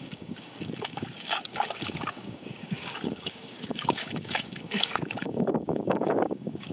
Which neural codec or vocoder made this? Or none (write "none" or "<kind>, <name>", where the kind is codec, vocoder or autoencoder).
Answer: codec, DAC